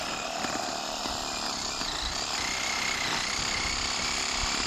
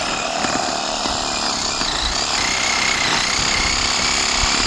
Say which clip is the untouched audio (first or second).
second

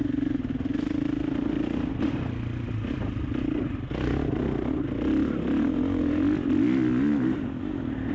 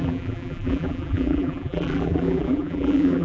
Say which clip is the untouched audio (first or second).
first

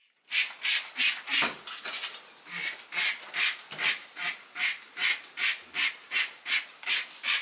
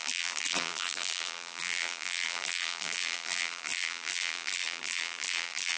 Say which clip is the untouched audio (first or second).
first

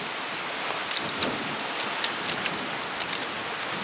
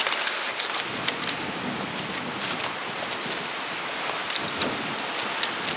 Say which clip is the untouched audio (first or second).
first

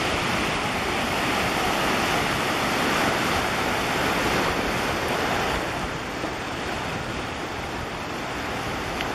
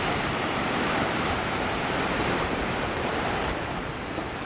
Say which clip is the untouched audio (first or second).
first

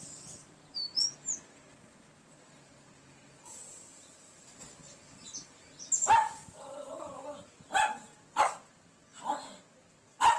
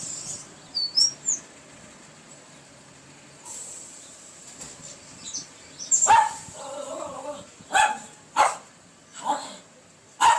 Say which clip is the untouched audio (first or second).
first